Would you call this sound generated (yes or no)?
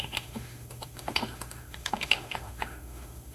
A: yes